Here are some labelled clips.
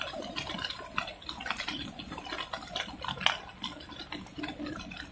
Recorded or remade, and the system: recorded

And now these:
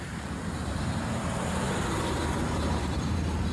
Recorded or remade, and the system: remade, vocoder, BigVGAN v2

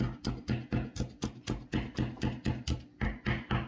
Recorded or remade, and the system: recorded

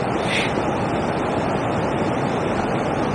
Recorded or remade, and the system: recorded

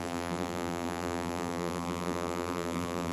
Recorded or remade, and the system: remade, vocoder, BigVGAN v2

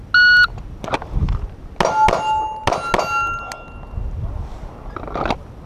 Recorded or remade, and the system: recorded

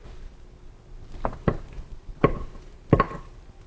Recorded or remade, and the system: recorded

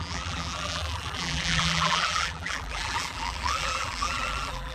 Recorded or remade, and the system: remade, vocoder, BigVGAN v2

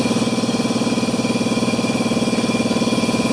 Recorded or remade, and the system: recorded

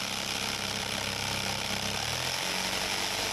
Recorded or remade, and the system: recorded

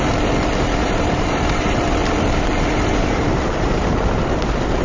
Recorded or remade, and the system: remade, vocoder, BigVGAN v2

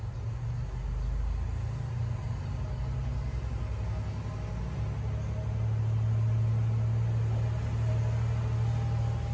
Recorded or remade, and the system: recorded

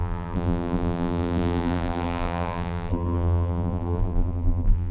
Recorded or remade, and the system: remade, vocoder, BigVGAN v2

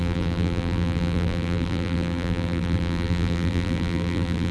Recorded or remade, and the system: remade, vocoder, BigVGAN v2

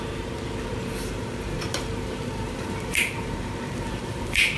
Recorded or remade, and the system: remade, vocoder, BigVGAN v2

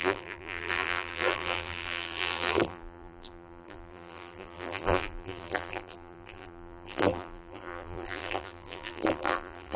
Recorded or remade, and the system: remade, vocoder, BigVGAN v2